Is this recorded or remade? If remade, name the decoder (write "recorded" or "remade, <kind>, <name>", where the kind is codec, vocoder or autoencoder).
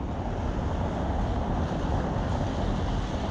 recorded